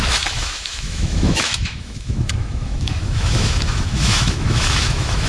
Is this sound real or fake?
fake